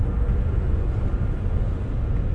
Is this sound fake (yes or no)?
no